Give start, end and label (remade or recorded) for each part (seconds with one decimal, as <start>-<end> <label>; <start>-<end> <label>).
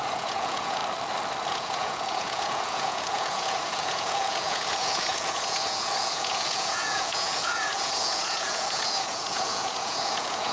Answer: 0.0-0.8 remade; 0.8-1.5 recorded; 1.5-10.5 remade